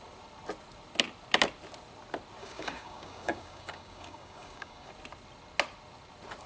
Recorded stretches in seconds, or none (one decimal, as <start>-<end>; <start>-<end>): 0.0-2.4; 4.9-6.5